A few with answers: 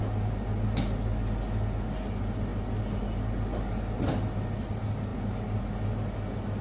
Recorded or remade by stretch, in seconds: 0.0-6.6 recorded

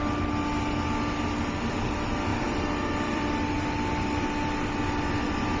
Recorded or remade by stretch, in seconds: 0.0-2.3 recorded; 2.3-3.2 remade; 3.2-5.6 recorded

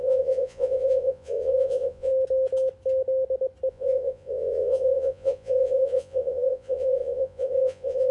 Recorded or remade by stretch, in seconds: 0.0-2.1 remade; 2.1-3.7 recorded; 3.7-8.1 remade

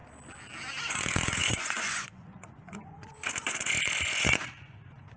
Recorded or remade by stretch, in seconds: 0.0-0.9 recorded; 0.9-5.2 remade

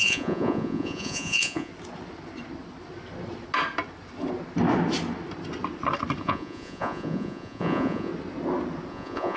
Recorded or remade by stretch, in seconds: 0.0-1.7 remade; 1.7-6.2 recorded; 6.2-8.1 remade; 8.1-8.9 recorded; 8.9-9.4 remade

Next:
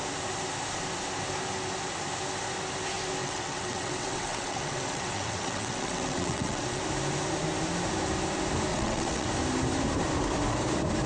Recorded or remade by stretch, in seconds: 0.0-3.2 recorded; 3.2-6.8 remade; 6.8-8.7 recorded; 8.7-9.3 remade; 9.3-11.1 recorded

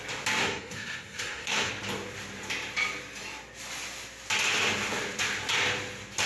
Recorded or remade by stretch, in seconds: 0.0-0.4 recorded; 0.4-1.7 remade; 1.7-6.3 recorded